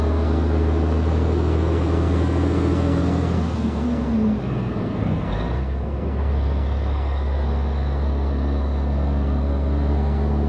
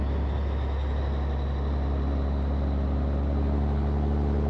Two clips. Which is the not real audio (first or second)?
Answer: first